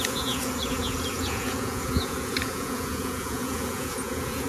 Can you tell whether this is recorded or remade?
remade